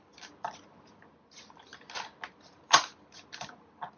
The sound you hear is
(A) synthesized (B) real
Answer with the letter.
B